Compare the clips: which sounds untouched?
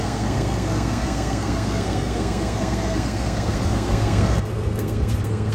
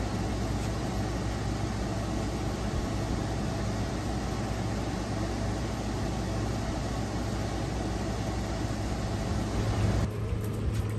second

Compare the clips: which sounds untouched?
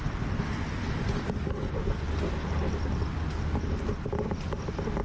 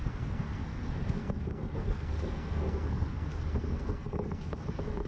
first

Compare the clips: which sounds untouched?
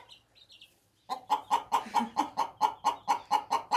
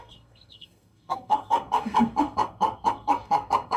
first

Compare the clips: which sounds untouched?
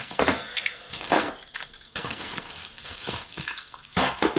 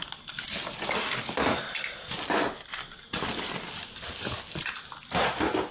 second